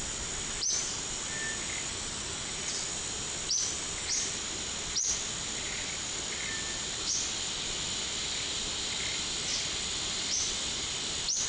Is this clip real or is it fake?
real